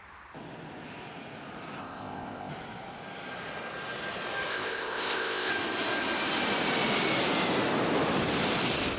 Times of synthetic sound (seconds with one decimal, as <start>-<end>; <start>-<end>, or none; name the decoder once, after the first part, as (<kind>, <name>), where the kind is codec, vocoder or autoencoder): 1.8-2.5 (codec, ZipCodec); 4.5-5.5